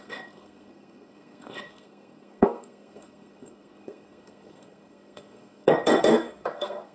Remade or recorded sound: remade